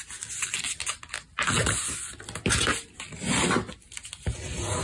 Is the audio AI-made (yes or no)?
no